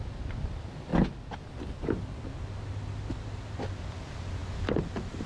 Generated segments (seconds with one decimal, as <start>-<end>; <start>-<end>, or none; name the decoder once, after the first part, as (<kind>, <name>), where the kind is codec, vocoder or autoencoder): none